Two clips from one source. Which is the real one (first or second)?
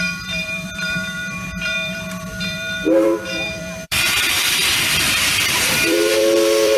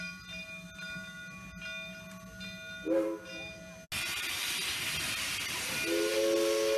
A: second